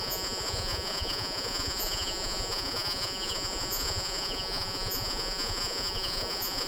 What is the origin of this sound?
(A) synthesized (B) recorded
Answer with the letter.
A